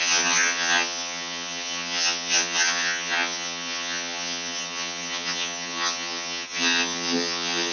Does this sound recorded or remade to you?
remade